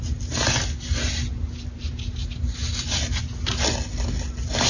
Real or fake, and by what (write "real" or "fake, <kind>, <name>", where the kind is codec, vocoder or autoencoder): real